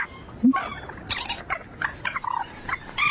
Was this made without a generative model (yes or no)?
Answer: yes